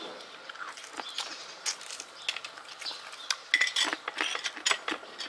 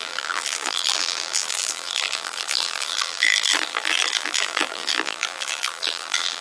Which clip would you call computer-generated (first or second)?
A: second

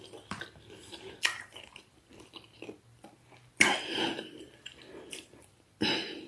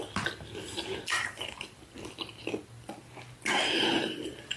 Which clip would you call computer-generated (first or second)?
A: first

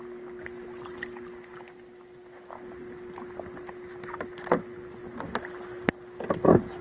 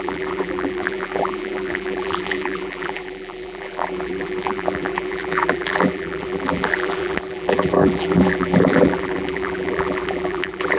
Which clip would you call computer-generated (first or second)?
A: second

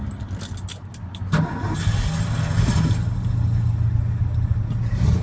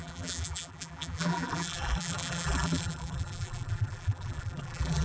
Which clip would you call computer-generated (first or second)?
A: second